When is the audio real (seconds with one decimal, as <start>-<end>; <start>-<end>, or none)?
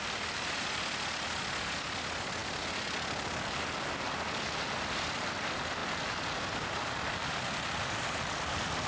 0.0-8.9